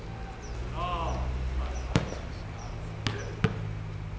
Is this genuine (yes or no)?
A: yes